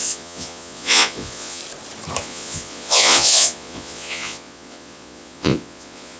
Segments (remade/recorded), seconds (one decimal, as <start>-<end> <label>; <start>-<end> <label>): 0.0-1.6 remade; 1.6-2.2 recorded; 2.2-6.2 remade